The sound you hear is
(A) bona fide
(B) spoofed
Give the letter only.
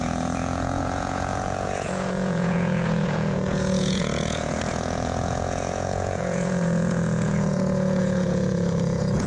B